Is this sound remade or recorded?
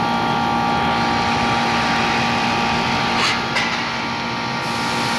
recorded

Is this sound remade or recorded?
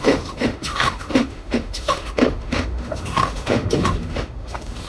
remade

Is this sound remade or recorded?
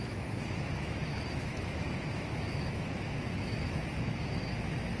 remade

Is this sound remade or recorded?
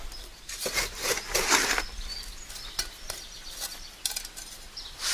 recorded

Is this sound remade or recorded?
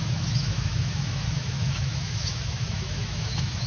remade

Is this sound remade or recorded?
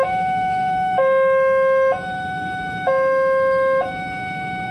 remade